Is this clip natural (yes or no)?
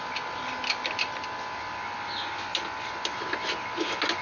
yes